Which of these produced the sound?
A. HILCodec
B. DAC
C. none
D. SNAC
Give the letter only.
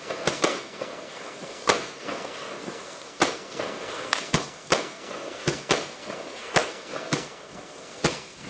D